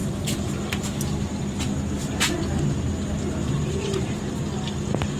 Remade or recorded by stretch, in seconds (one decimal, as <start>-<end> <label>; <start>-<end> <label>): 0.0-1.2 remade; 1.2-2.0 recorded; 2.0-2.6 remade; 2.6-3.4 recorded; 3.4-4.3 remade; 4.3-5.2 recorded